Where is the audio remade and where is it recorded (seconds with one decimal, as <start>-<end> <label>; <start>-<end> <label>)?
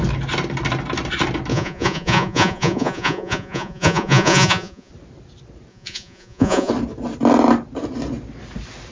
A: 0.0-1.5 recorded; 1.5-4.9 remade; 4.9-5.7 recorded; 5.7-6.7 remade; 6.7-8.9 recorded